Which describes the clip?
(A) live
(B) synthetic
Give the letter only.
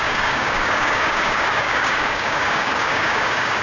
B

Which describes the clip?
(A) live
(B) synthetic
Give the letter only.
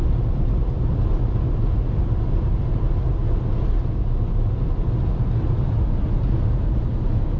A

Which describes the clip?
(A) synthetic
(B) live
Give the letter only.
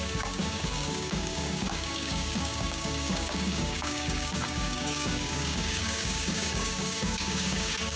A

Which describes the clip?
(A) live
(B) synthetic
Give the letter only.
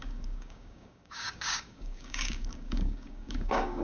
B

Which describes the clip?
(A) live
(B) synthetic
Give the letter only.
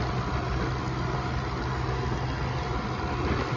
A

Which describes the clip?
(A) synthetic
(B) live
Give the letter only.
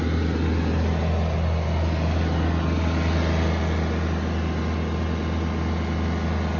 B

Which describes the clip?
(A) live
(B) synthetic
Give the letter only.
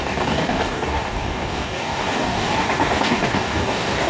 B